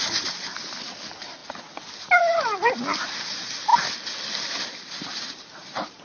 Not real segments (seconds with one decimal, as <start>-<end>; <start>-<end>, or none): none